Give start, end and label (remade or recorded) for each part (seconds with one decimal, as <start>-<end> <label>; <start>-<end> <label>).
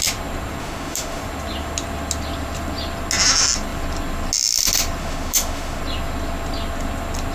0.0-0.6 recorded; 0.6-1.2 remade; 1.2-5.0 recorded; 5.0-5.8 remade; 5.8-7.3 recorded